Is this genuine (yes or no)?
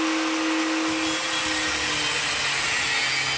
yes